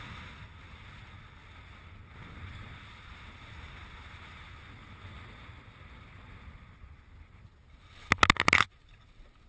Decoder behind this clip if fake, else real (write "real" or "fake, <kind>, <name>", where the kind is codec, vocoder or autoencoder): real